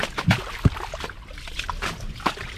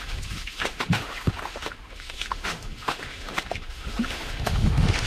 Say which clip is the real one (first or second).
first